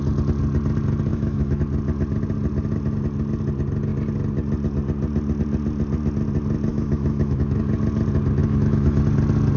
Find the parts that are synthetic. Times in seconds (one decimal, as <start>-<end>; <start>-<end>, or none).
1.1-1.6; 6.7-7.6; 8.4-9.0